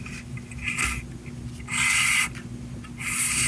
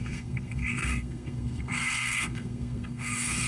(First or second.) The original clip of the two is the first